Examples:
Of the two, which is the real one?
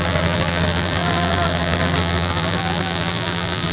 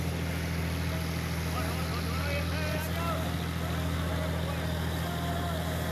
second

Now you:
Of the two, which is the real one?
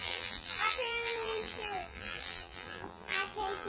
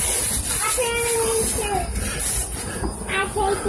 second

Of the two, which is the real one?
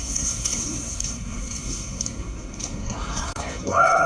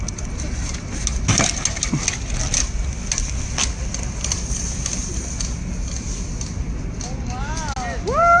second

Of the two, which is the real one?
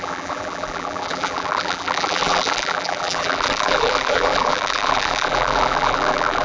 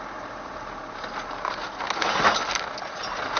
second